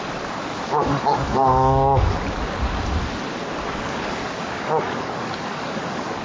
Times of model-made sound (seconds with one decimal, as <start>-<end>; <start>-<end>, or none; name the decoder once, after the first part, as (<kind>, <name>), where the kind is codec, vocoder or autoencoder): 0.9-2.2 (codec, DAC); 3.7-6.2